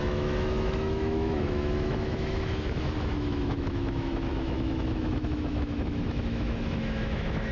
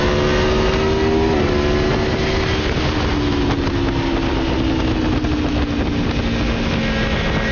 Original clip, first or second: second